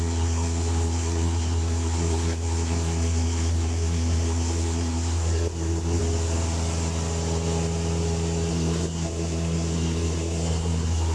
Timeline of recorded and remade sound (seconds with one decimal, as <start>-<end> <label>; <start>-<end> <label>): 0.0-6.0 remade; 6.0-8.5 recorded; 8.5-11.1 remade